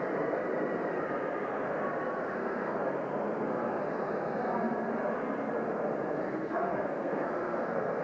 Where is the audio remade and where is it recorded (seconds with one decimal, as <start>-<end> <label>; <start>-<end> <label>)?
0.0-2.4 recorded; 2.4-3.1 remade; 3.1-6.3 recorded; 6.3-8.0 remade